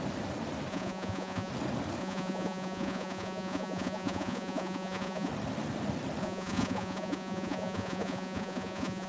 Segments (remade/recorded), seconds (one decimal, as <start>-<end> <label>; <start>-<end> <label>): 0.0-0.7 recorded; 0.7-1.5 remade; 1.5-2.0 recorded; 2.0-5.3 remade; 5.3-6.2 recorded; 6.2-9.1 remade